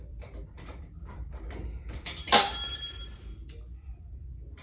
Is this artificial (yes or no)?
yes